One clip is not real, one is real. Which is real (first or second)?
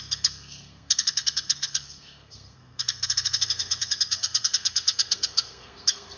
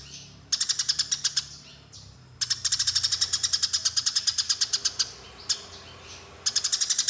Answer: second